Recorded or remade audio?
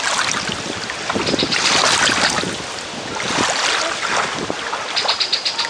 recorded